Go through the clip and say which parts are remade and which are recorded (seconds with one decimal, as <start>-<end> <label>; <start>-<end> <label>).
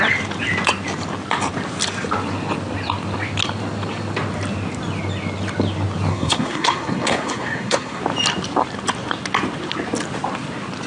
0.0-6.1 recorded; 6.1-8.0 remade; 8.0-10.9 recorded